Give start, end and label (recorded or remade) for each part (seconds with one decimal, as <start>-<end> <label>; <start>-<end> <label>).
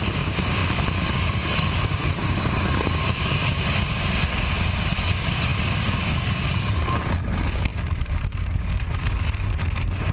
0.0-10.1 remade